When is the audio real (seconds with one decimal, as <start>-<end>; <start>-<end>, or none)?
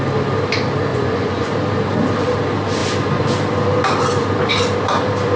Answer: 0.0-0.9; 1.5-5.4